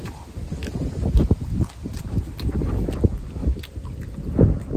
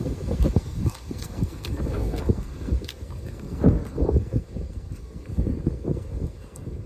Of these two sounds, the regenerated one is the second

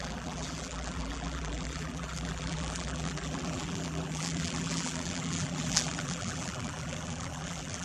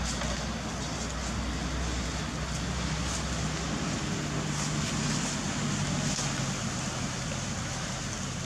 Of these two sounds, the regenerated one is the first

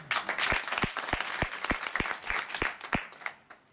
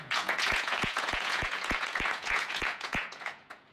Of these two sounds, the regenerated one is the second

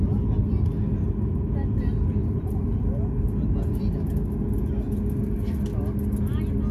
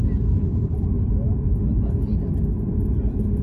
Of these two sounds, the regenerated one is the second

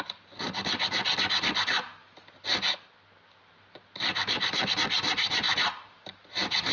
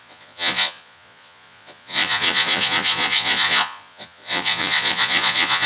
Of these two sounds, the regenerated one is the second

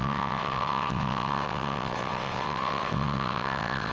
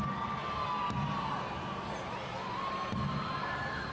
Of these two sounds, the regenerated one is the first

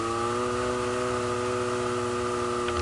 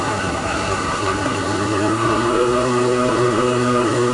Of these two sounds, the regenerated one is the second